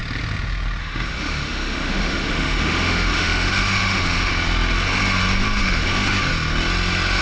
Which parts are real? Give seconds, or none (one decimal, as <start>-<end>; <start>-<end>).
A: 0.0-0.8; 4.3-5.6; 6.3-7.2